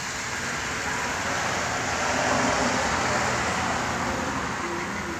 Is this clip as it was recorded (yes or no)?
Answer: yes